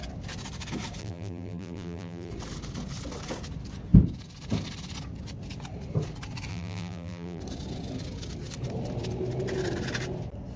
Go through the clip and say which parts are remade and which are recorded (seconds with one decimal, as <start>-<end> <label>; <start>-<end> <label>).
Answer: 0.0-1.0 recorded; 1.0-2.3 remade; 2.3-6.5 recorded; 6.5-7.4 remade; 7.4-10.6 recorded